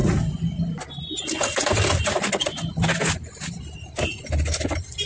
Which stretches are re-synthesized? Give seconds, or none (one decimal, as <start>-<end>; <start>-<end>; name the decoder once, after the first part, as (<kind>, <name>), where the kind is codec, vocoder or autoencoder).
none